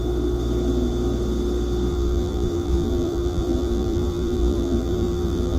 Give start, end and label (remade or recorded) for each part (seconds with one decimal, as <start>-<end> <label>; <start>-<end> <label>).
0.0-1.9 recorded; 1.9-5.6 remade